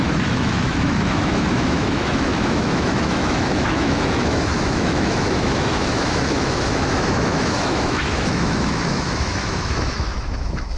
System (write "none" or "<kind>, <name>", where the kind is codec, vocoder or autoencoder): autoencoder, DAC-VAE